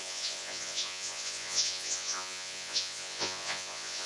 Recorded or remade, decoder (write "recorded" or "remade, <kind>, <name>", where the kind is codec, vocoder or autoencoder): remade, vocoder, Vocos